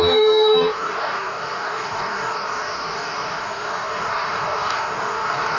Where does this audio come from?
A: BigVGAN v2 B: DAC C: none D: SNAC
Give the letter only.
B